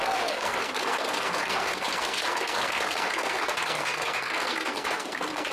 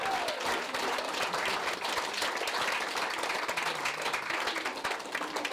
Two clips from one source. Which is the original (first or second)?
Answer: second